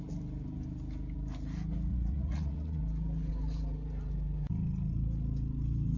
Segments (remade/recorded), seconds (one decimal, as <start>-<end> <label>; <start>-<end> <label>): 0.0-1.9 recorded; 1.9-2.8 remade; 2.8-6.0 recorded